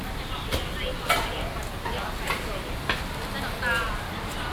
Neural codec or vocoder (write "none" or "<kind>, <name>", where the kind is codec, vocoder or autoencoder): none